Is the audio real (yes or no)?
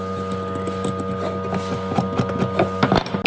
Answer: yes